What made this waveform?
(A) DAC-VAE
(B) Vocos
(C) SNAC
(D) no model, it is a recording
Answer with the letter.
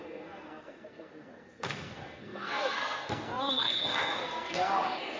C